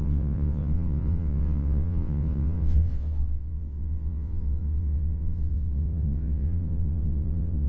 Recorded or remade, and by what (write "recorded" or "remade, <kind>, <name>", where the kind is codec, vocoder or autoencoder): remade, vocoder, WaveNeXt